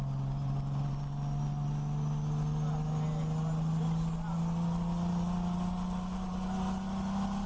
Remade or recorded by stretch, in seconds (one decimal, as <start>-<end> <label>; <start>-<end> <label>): 0.0-7.5 recorded